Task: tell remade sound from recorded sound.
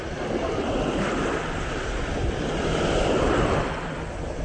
recorded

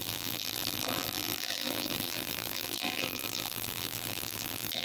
remade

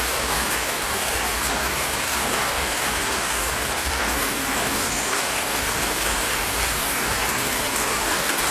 remade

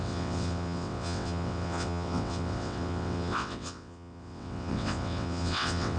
remade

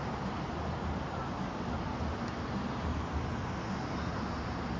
recorded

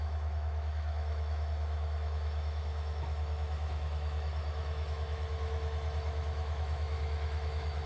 remade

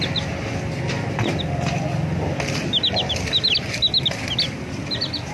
recorded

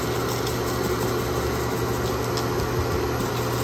recorded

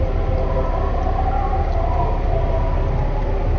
recorded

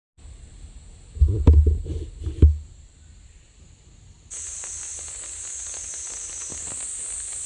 recorded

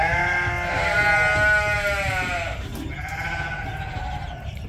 recorded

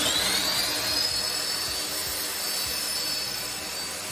recorded